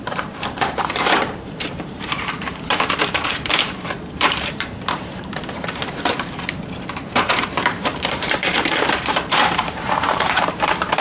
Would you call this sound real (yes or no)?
no